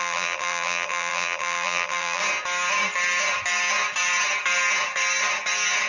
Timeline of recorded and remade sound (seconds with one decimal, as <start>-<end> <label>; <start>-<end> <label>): 0.0-2.2 remade; 2.2-5.9 recorded